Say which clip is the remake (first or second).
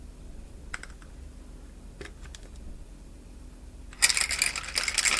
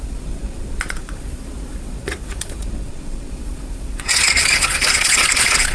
second